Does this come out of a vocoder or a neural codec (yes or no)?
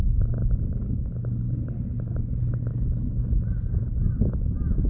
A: no